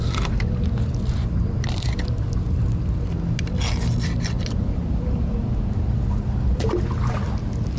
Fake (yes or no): no